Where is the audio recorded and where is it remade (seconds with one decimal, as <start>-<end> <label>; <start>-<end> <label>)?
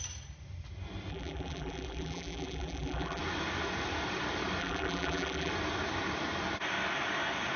0.0-1.1 recorded; 1.1-3.2 remade; 3.2-4.6 recorded; 4.6-5.5 remade; 5.5-7.6 recorded